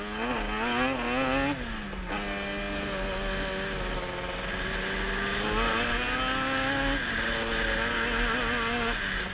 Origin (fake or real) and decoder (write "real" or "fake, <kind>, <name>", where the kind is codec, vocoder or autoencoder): real